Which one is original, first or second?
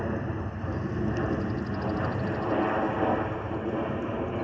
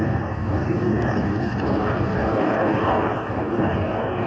first